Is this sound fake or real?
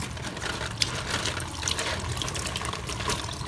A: fake